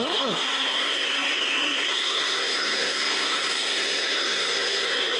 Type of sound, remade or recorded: remade